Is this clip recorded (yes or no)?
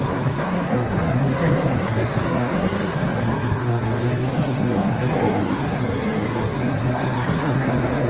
no